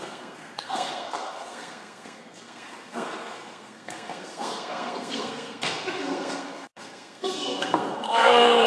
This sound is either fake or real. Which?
fake